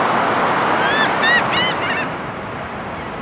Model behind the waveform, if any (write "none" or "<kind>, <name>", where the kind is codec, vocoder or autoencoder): none